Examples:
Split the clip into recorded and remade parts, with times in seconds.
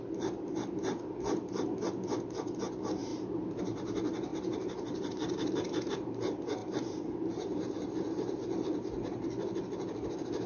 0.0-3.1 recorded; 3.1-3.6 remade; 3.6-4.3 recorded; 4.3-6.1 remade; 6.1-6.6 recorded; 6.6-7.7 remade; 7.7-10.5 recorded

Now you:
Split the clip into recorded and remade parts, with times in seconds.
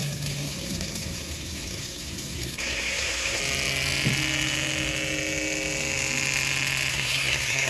0.0-3.4 remade; 3.4-6.9 recorded; 6.9-7.7 remade